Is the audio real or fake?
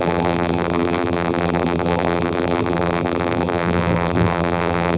fake